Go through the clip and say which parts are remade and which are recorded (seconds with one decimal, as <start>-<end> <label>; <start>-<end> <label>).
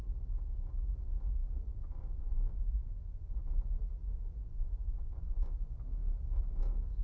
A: 0.0-1.7 recorded; 1.7-3.4 remade; 3.4-4.0 recorded; 4.0-5.5 remade; 5.5-7.0 recorded